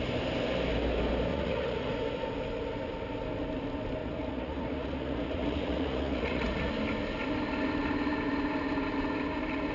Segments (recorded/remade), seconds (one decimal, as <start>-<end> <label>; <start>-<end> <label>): 0.0-1.3 recorded; 1.3-1.9 remade; 1.9-4.0 recorded; 4.0-6.7 remade; 6.7-9.7 recorded